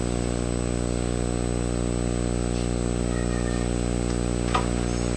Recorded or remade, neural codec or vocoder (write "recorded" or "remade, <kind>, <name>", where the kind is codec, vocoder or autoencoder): recorded